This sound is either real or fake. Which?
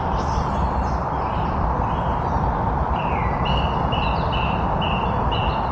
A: fake